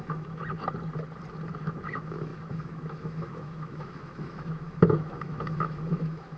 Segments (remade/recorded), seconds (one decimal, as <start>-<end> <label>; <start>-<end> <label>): 0.0-0.4 remade; 0.4-1.5 recorded; 1.5-6.4 remade